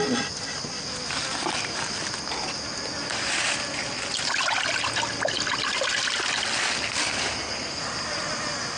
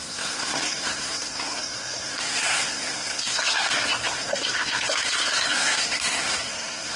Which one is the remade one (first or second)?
second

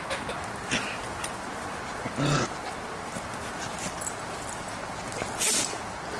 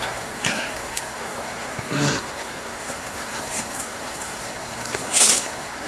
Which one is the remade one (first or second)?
second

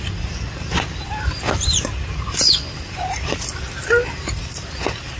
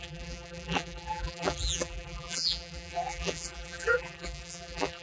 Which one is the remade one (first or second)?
second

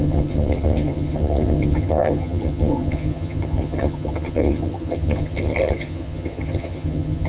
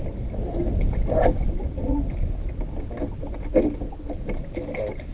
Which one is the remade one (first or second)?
first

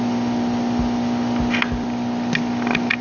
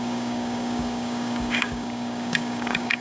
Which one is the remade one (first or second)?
second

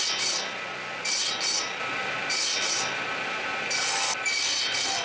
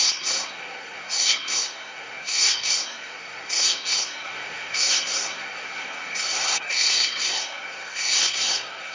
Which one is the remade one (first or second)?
second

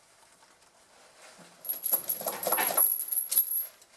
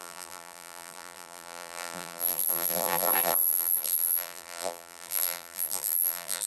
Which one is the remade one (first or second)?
second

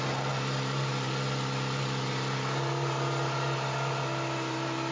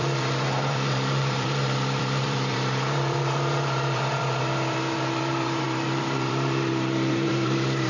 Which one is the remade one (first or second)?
second